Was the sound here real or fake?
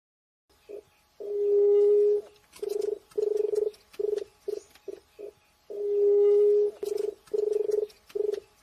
real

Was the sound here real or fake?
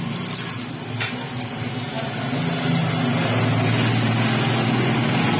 real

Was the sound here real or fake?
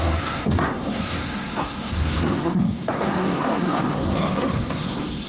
fake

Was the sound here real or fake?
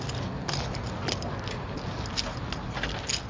real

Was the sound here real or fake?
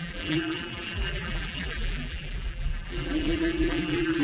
fake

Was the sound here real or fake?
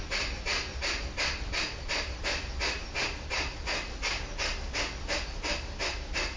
real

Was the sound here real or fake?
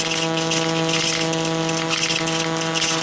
real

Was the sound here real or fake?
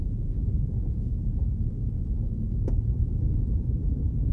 fake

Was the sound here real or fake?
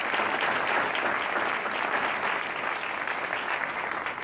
real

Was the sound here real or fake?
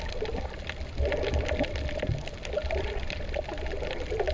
real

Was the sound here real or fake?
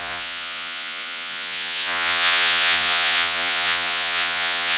fake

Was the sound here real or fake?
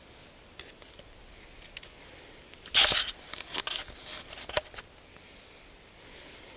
real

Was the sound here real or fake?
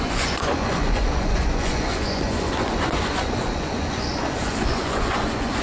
fake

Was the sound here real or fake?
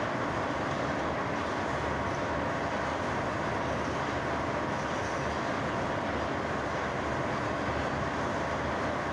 real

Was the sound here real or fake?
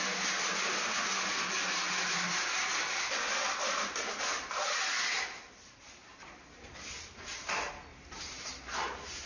real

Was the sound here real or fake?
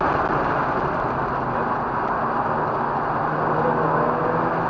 real